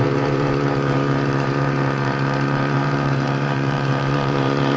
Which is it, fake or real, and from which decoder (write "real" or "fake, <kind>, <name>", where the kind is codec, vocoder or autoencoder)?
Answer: fake, vocoder, BigVGAN v2